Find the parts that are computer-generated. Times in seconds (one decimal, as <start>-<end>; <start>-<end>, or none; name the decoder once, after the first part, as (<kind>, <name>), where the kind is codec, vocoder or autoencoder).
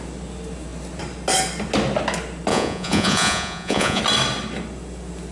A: 2.5-4.0 (vocoder, Vocos)